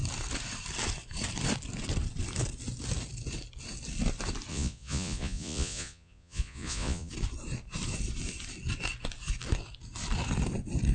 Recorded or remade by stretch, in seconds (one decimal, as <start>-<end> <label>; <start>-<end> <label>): 0.0-4.5 recorded; 4.5-7.1 remade; 7.1-10.9 recorded